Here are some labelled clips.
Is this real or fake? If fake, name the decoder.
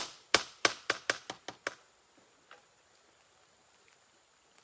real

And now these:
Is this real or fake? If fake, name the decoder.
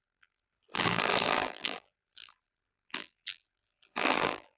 fake, vocoder, BigVGAN v2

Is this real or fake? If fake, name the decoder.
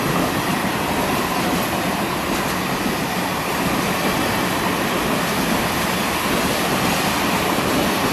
real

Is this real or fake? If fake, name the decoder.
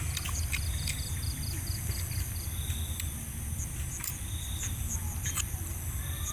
real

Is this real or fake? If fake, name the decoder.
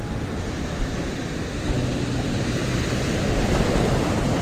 fake, vocoder, BigVGAN v2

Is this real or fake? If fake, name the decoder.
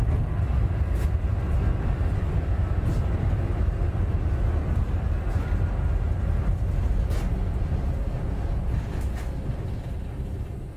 real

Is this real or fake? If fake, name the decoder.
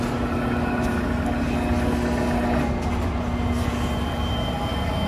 real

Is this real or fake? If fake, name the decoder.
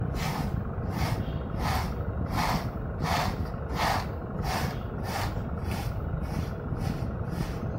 real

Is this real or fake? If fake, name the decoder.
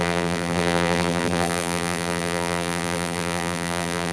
fake, vocoder, BigVGAN v2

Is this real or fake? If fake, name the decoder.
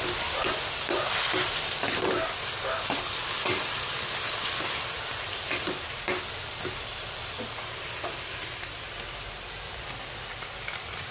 real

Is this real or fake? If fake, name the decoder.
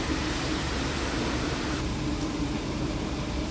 fake, vocoder, BigVGAN v2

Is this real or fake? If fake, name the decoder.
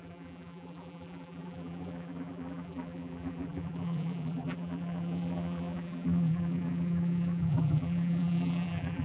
fake, vocoder, BigVGAN v2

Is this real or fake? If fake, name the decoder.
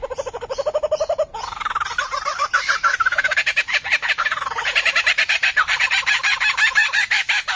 fake, vocoder, BigVGAN v2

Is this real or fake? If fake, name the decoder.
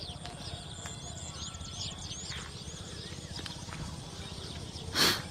real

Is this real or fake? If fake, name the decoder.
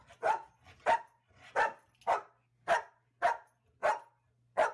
real